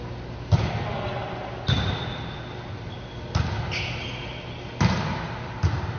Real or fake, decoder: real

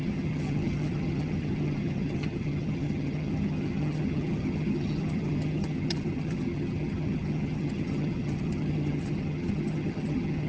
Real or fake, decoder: fake, vocoder, HiFi-GAN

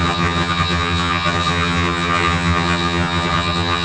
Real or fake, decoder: fake, vocoder, HiFi-GAN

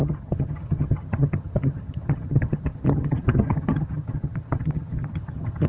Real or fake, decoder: fake, vocoder, HiFi-GAN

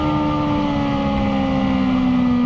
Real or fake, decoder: real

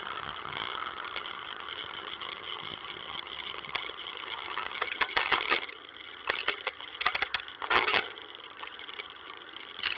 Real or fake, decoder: fake, vocoder, HiFi-GAN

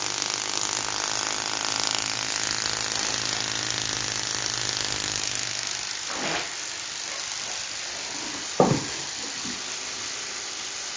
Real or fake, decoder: real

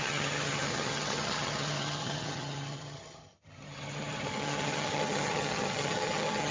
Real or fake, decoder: fake, vocoder, HiFi-GAN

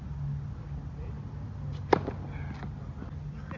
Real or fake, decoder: real